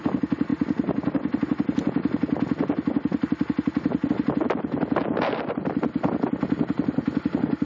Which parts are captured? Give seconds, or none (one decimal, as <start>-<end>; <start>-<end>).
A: 0.0-7.7